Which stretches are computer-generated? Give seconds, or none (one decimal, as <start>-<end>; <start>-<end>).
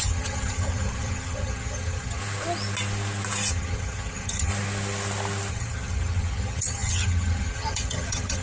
0.0-2.2; 3.5-4.5; 5.5-8.4